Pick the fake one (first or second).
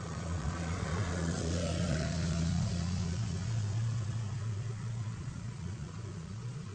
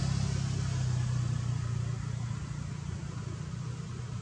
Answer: first